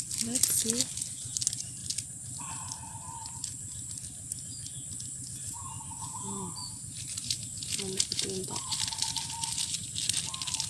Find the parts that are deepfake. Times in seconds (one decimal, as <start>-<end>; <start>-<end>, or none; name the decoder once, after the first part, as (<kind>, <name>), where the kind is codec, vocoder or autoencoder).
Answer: 1.8-2.4 (vocoder, BigVGAN v2)